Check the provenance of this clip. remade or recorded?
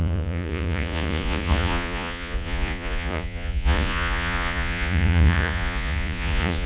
remade